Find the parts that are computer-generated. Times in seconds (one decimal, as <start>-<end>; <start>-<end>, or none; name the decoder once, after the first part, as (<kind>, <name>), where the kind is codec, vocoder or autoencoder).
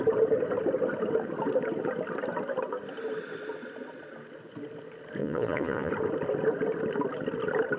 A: 5.2-5.9 (vocoder, Vocos)